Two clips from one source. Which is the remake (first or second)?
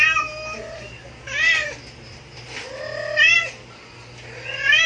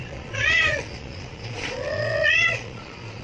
second